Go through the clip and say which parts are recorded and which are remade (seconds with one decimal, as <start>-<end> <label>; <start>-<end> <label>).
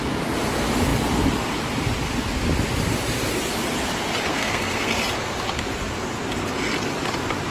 0.0-4.3 recorded; 4.3-4.9 remade; 4.9-7.5 recorded